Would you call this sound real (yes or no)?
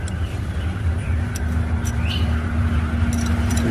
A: yes